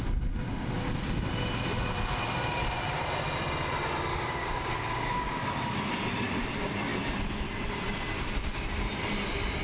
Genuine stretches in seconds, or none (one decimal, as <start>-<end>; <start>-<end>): 0.0-4.1; 5.4-9.6